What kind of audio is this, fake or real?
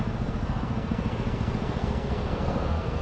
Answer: fake